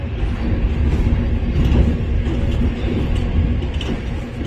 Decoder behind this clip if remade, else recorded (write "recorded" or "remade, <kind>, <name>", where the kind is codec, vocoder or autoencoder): recorded